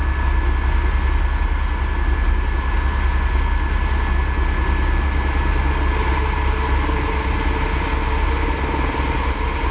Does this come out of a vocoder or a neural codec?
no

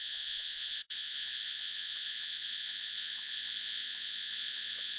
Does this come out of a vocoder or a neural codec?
yes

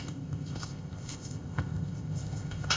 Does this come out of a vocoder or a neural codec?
yes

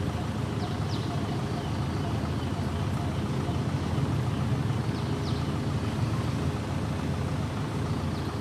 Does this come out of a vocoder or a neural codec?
no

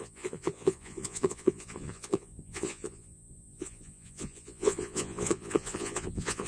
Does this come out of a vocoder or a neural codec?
yes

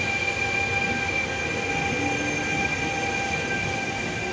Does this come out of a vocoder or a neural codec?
no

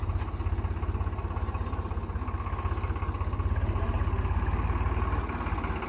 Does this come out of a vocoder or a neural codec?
no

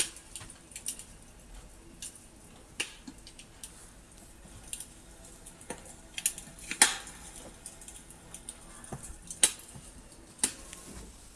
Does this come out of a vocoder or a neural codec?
no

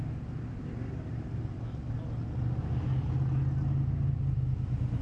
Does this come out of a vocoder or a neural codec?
no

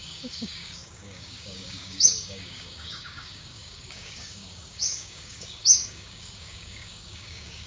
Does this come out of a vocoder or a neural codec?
yes